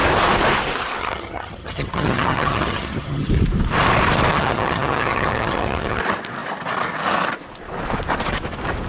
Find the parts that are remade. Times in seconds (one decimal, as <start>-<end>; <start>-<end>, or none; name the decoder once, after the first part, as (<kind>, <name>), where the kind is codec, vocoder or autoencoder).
1.0-3.3 (vocoder, HiFi-GAN); 4.3-6.0